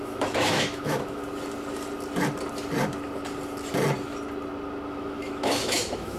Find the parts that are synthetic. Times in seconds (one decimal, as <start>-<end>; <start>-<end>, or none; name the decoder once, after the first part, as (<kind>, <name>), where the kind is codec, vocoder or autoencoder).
0.0-1.2 (autoencoder, DAC-VAE); 4.9-6.2